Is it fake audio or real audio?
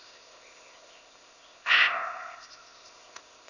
fake